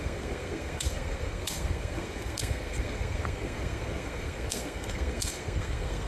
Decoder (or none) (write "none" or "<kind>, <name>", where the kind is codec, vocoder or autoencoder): codec, SNAC